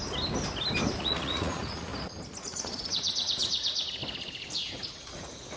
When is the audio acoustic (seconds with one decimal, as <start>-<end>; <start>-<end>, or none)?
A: 0.0-1.0; 1.9-2.4; 4.0-4.9